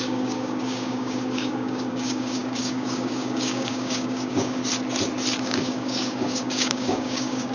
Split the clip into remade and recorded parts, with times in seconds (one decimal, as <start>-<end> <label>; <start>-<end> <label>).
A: 0.0-4.6 remade; 4.6-5.4 recorded; 5.4-7.5 remade